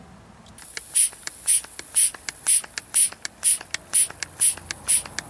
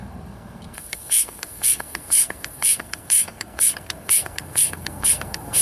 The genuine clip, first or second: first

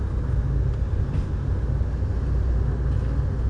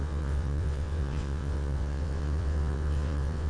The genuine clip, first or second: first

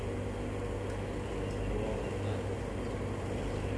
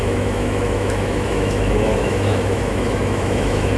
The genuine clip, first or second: first